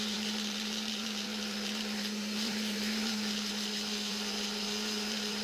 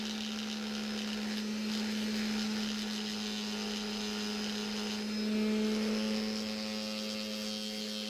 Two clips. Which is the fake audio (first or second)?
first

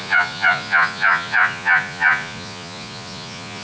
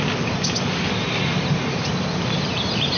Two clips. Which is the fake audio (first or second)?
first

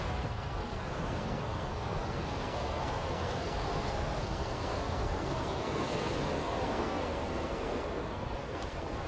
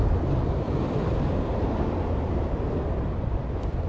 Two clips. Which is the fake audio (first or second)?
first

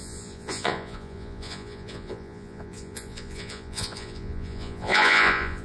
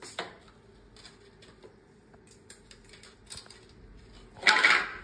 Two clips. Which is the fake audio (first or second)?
first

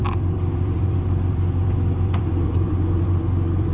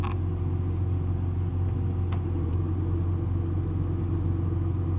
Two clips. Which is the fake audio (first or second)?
first